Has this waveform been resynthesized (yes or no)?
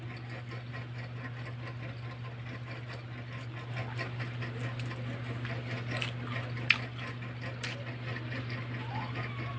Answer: no